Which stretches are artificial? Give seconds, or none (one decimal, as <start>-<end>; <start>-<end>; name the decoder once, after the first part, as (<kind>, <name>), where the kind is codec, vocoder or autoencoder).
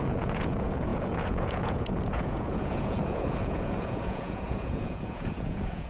0.0-5.9 (vocoder, Vocos)